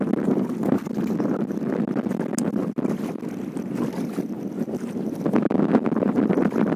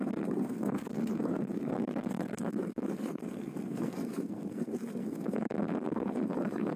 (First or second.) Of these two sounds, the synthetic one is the second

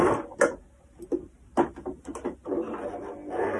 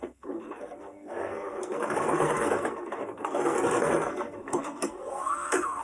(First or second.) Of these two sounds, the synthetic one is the second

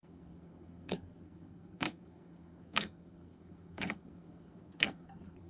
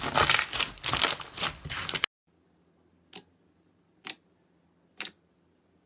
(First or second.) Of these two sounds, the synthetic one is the first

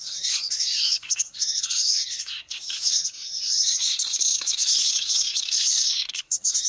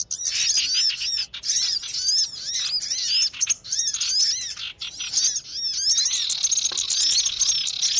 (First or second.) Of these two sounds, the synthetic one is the first